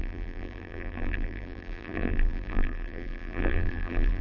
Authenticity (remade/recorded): remade